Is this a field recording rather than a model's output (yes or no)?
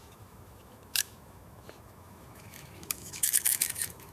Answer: no